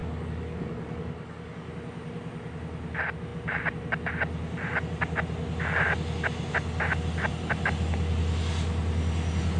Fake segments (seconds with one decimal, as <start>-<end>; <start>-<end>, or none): 0.0-1.7